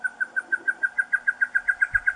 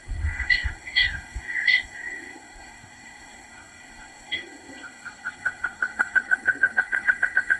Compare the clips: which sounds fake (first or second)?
second